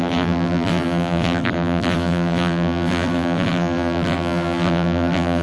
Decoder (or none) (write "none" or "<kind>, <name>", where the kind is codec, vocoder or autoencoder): vocoder, BigVGAN v2